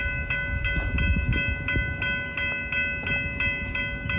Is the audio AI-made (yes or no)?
no